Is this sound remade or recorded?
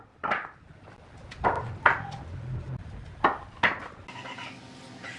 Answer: recorded